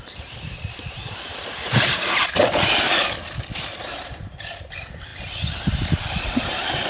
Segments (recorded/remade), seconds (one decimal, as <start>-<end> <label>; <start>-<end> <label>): 0.0-2.4 remade; 2.4-3.8 recorded; 3.8-5.1 remade; 5.1-6.0 recorded; 6.0-6.9 remade